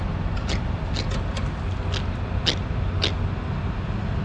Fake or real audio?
real